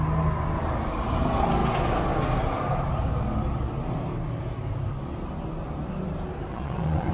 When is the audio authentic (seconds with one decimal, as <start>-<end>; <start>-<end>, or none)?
0.0-6.5